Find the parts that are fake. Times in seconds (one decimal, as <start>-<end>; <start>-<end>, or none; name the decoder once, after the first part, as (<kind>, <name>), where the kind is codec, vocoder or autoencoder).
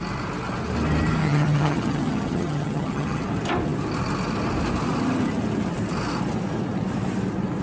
1.2-3.2 (vocoder, HiFi-GAN)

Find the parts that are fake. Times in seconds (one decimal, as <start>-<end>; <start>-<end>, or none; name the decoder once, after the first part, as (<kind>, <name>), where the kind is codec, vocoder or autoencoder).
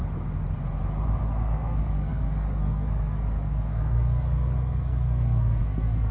1.4-6.1 (codec, SNAC)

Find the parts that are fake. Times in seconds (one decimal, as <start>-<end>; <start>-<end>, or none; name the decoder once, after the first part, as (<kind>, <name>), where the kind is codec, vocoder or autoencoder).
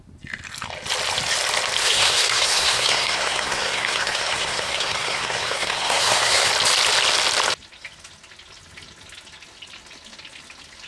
1.8-6.5 (codec, SNAC)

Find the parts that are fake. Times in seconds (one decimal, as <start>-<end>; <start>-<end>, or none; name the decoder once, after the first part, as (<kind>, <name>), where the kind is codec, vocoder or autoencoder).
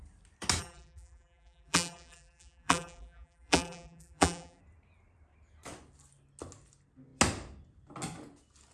0.6-4.6 (vocoder, BigVGAN v2)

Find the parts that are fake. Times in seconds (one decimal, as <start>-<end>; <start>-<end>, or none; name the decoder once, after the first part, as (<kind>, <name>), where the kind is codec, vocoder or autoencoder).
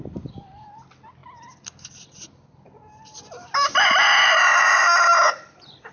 none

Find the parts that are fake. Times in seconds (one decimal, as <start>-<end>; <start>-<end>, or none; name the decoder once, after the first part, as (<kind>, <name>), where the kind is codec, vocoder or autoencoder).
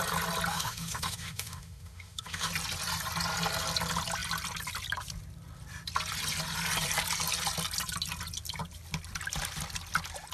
0.5-2.5 (autoencoder, DAC-VAE)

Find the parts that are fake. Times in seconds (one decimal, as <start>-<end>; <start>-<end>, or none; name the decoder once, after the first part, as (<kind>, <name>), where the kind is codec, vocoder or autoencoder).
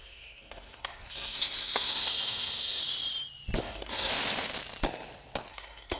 0.0-2.8 (codec, SNAC); 3.6-4.1; 5.5-6.0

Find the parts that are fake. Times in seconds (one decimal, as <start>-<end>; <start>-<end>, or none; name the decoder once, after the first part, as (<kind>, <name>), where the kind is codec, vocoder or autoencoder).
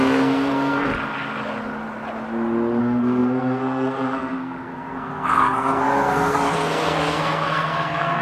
0.0-0.9 (codec, SNAC); 2.8-8.2